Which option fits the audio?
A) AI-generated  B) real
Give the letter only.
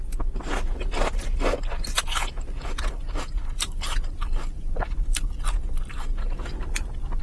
B